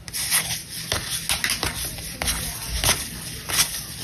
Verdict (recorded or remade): recorded